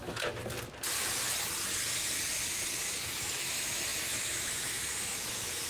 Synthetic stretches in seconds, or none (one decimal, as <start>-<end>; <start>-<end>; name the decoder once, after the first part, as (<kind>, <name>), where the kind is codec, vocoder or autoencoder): 0.0-0.4 (autoencoder, DAC-VAE); 3.0-5.7